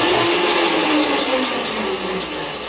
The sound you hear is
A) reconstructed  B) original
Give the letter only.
B